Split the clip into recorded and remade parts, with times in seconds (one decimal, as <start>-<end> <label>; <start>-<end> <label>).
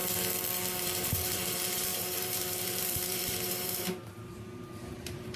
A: 0.0-0.8 recorded; 0.8-5.4 remade